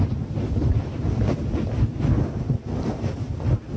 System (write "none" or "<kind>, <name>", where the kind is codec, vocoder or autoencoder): none